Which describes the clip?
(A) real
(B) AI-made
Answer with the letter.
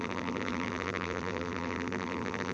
B